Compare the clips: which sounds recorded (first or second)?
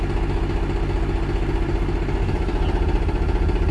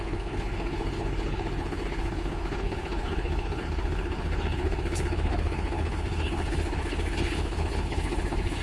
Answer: first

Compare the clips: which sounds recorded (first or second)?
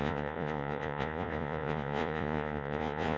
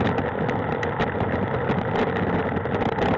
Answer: second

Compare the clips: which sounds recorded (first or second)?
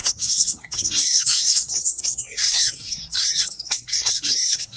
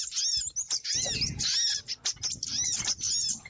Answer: second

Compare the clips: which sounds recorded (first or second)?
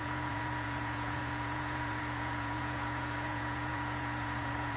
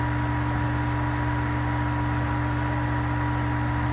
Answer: second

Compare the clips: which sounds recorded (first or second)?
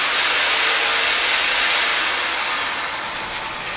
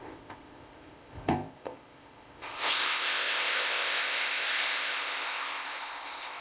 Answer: first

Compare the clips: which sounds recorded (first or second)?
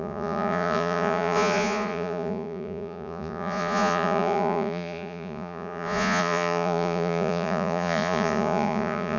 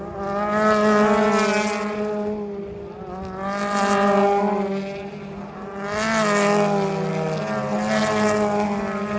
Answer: second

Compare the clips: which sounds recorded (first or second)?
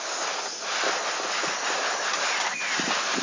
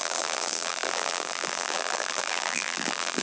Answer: first